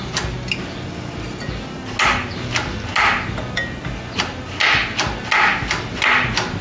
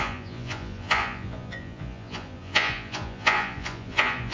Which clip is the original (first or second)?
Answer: first